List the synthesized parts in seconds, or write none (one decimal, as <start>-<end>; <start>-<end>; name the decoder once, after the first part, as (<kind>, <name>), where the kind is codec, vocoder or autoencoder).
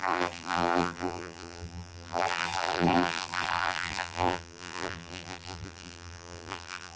0.0-7.0 (vocoder, BigVGAN v2)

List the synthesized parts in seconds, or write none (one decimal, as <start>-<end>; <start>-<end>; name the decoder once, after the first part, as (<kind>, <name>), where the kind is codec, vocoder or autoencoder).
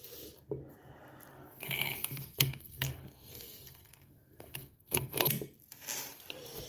1.3-5.3 (codec, SNAC)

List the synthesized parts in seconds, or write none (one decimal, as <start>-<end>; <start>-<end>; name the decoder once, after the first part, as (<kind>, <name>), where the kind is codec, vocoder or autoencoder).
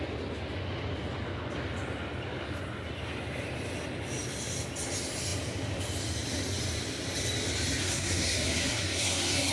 7.8-9.5 (codec, SNAC)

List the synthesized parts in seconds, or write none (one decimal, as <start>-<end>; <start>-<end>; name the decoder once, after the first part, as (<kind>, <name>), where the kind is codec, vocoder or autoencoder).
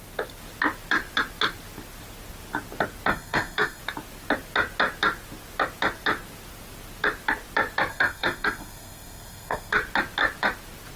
3.1-3.8 (codec, SNAC); 7.9-9.7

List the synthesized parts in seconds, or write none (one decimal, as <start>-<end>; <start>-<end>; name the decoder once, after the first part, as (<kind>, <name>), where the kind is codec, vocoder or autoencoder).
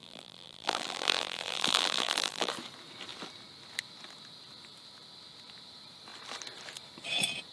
0.0-2.5 (vocoder, BigVGAN v2)